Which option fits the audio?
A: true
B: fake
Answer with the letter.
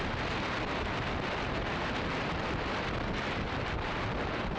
A